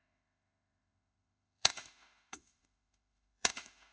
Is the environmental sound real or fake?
fake